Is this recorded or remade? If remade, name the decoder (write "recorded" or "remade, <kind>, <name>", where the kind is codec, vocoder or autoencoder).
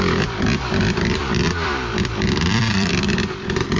remade, vocoder, BigVGAN v2